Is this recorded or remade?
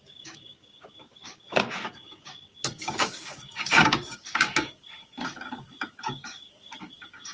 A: remade